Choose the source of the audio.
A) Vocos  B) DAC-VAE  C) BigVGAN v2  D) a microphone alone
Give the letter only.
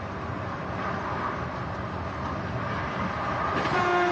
D